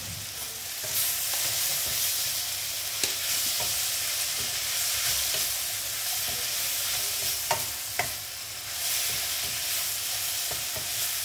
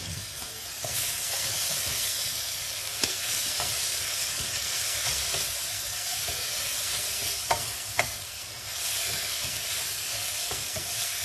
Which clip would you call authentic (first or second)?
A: first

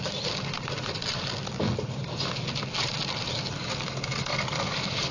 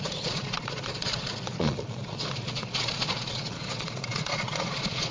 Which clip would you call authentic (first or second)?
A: first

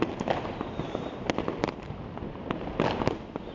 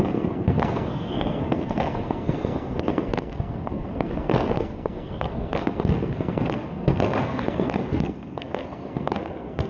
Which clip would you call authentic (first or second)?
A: first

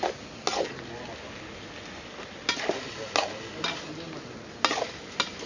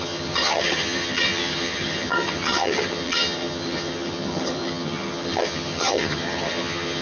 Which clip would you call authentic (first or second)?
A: first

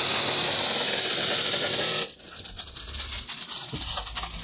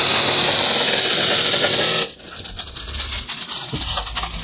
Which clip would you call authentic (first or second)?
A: second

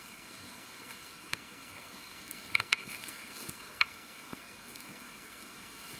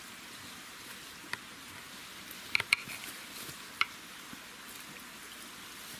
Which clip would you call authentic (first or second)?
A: second